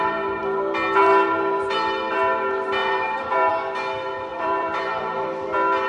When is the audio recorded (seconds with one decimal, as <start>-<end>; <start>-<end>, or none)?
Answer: 0.0-2.8; 3.5-4.3; 5.0-5.9